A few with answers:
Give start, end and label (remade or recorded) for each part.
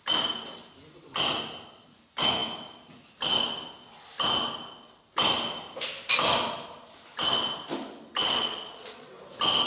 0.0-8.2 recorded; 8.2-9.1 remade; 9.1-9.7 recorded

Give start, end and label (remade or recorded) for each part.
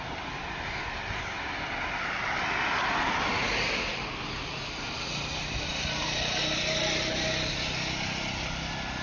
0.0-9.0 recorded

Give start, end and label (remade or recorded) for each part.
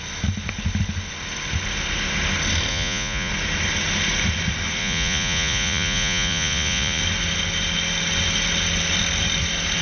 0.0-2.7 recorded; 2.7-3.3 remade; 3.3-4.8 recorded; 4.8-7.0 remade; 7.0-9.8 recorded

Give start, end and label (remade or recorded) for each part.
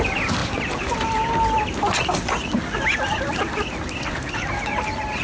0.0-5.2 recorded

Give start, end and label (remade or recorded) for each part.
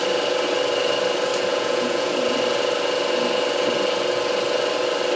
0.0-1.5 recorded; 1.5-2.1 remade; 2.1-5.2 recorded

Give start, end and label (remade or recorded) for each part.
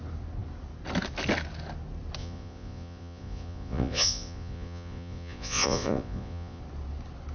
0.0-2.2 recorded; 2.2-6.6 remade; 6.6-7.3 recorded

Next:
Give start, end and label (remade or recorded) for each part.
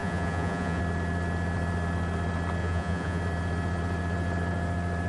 0.0-0.8 remade; 0.8-2.6 recorded; 2.6-3.2 remade; 3.2-5.1 recorded